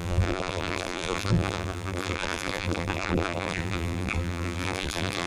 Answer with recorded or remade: remade